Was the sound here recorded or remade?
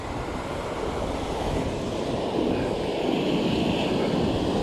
recorded